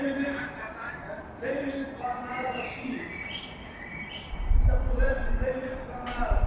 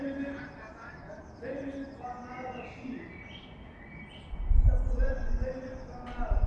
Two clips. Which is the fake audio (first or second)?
first